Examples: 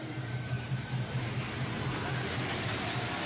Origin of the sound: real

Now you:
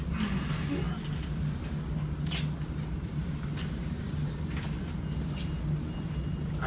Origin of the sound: real